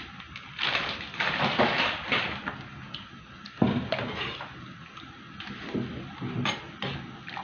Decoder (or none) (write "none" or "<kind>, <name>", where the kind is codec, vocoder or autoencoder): none